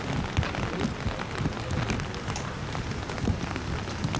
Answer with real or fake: real